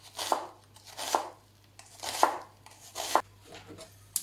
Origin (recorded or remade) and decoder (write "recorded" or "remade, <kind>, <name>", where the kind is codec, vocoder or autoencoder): recorded